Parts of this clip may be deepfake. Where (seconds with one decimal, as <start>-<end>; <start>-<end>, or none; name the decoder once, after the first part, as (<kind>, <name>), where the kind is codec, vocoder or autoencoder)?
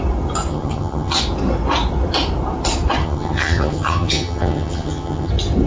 0.5-1.2 (vocoder, HiFi-GAN); 3.0-5.3